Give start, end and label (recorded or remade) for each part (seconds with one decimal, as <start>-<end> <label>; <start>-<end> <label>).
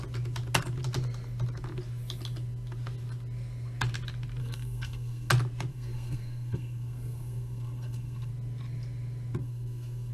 0.0-4.4 recorded; 4.4-5.3 remade; 5.3-5.7 recorded; 5.7-8.3 remade; 8.3-9.4 recorded; 9.4-10.1 remade